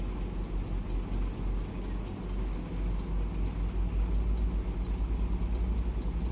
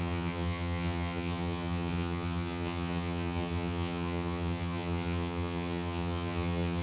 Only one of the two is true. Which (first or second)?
first